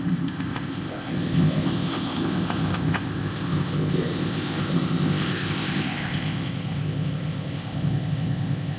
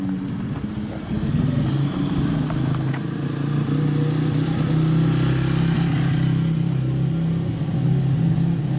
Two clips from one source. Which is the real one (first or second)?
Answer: second